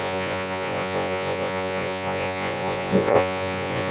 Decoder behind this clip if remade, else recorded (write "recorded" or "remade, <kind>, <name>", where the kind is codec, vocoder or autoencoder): remade, vocoder, Vocos